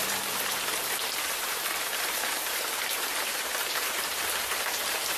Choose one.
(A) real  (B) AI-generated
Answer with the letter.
B